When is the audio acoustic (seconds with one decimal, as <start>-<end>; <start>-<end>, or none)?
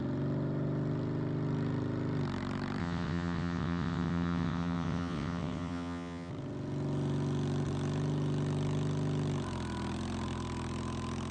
0.0-2.8; 6.3-11.3